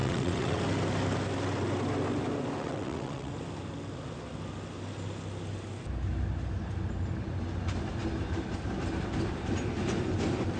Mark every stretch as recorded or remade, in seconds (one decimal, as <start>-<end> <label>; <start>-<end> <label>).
0.0-0.6 remade; 0.6-2.6 recorded; 2.6-3.3 remade; 3.3-10.6 recorded